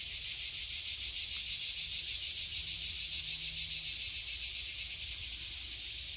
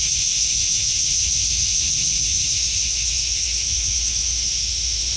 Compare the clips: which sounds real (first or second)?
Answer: first